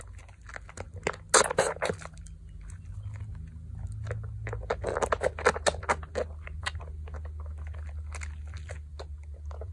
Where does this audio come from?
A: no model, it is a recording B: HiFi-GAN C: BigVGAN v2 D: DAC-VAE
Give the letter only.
A